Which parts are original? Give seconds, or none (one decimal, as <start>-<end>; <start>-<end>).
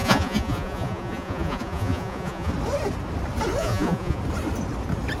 2.5-3.6; 4.2-5.2